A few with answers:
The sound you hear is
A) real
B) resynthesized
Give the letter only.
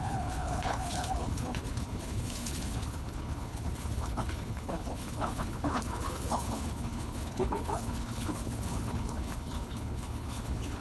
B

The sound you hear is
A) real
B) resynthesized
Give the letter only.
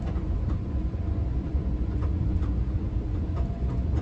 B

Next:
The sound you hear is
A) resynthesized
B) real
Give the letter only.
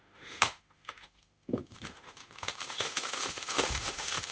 A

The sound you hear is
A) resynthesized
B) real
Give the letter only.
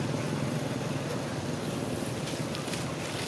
B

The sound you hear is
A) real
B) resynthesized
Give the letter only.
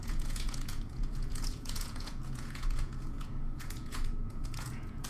B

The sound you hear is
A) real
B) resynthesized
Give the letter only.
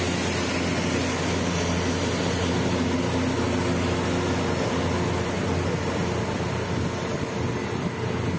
A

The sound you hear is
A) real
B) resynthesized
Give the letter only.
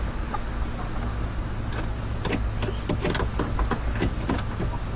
A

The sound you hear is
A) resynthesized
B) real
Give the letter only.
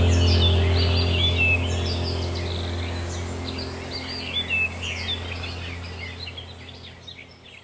B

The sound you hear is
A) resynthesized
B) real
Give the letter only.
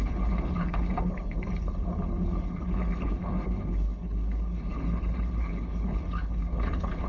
A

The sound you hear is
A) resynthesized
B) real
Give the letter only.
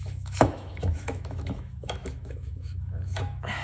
A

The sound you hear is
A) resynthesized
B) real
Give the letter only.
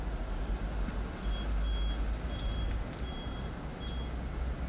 B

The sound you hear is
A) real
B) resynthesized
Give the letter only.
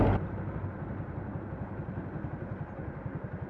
A